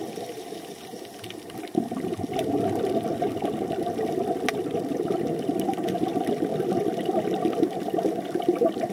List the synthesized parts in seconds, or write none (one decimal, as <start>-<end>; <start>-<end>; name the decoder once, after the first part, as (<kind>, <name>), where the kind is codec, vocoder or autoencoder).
none